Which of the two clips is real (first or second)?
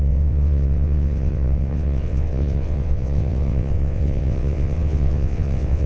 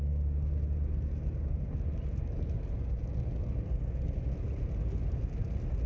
second